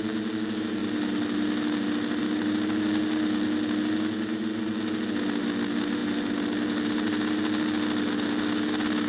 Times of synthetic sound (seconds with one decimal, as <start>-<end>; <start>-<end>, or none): none